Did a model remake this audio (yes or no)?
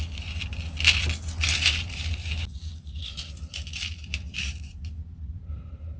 no